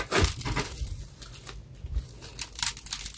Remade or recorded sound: recorded